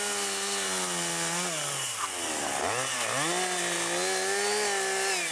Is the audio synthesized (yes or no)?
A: no